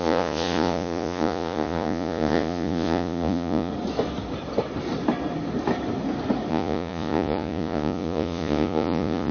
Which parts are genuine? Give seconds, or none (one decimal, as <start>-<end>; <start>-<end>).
3.7-6.5

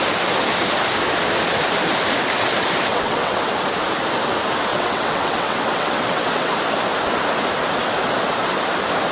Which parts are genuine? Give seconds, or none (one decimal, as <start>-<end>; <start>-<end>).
0.0-2.9; 3.5-4.7; 6.5-9.1